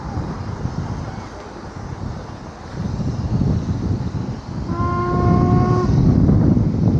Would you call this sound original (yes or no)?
yes